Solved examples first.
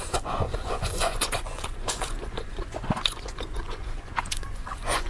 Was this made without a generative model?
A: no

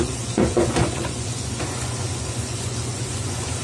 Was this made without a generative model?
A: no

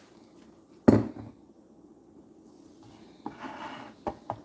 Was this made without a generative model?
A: yes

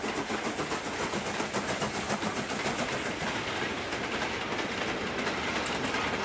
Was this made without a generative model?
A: yes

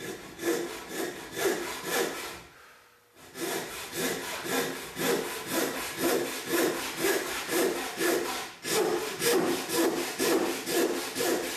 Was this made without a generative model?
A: yes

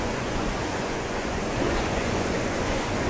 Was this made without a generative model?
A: no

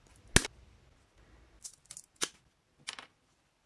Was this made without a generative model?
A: yes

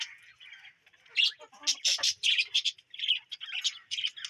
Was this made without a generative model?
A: yes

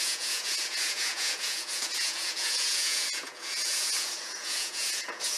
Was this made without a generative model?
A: no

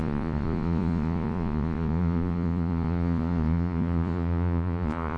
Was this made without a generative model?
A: no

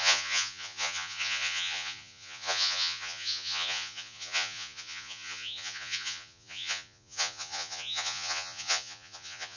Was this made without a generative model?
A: no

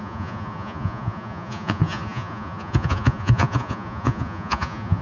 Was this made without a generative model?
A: no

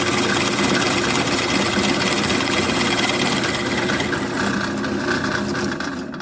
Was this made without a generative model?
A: yes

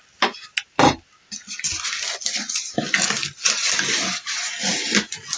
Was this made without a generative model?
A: yes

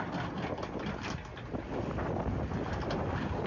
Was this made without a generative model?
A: yes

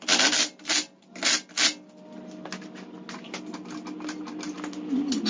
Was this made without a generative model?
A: yes